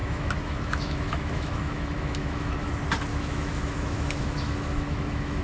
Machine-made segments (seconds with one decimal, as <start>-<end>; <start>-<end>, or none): 0.0-2.7; 3.1-5.4